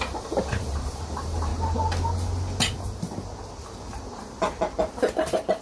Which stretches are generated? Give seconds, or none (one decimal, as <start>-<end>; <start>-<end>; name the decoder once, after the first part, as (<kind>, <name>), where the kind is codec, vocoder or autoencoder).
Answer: 0.0-1.5 (vocoder, BigVGAN v2); 4.9-5.6